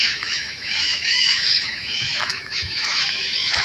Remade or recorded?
remade